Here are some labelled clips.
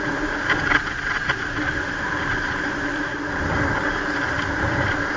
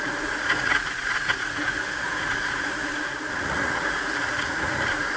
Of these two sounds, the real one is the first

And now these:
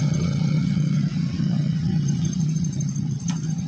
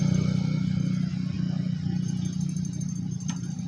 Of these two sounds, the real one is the second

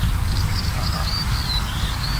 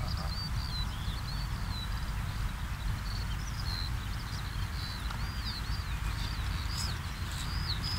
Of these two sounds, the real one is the second